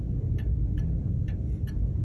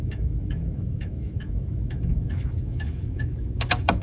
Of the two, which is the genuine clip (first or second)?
first